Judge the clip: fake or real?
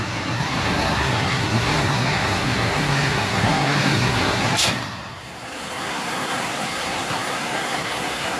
fake